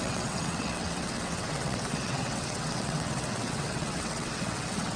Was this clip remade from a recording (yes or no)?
yes